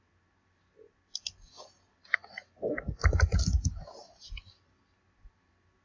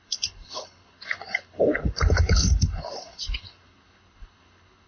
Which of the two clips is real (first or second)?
first